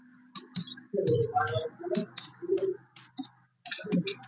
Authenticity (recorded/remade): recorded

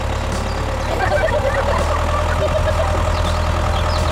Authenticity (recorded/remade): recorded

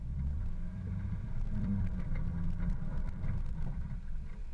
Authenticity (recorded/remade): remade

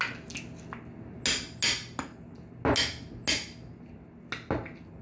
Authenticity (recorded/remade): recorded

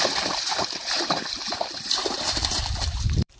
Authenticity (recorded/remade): remade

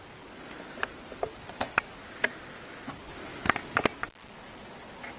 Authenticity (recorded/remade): recorded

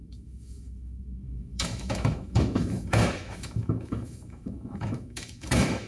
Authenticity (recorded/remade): remade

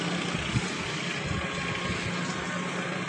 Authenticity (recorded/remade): recorded